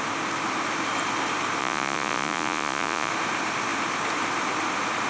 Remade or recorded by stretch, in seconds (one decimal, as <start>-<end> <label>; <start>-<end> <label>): 0.0-1.6 recorded; 1.6-3.1 remade; 3.1-5.1 recorded